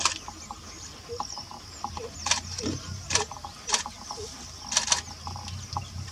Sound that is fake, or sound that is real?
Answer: real